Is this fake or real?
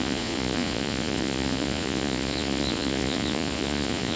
fake